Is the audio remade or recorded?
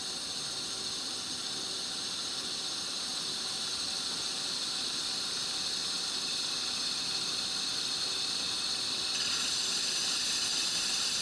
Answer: recorded